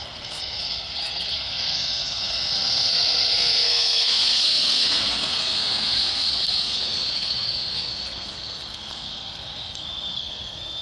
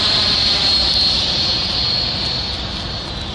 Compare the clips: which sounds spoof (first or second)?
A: first